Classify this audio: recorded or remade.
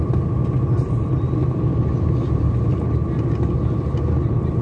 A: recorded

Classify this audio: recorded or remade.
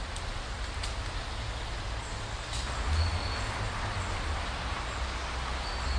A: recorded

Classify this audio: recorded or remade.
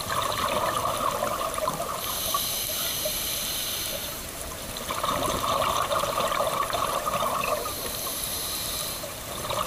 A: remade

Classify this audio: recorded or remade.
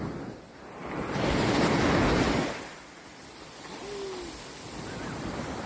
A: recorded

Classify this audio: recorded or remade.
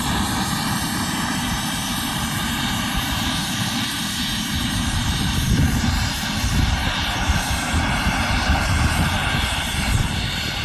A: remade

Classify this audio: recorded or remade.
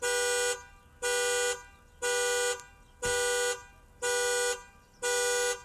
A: recorded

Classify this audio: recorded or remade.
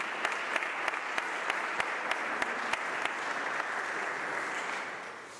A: recorded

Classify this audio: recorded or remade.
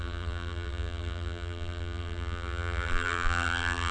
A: remade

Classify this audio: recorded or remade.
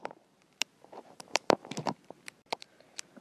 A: remade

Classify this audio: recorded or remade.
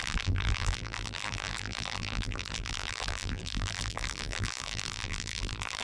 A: remade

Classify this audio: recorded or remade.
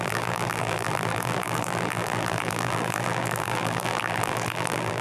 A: remade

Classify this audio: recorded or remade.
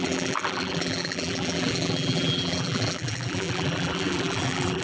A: remade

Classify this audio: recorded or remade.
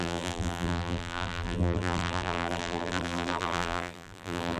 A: remade